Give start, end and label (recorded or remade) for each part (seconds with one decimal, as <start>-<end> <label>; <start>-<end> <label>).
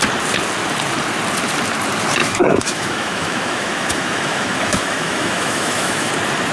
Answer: 0.0-2.2 recorded; 2.2-6.1 remade; 6.1-6.5 recorded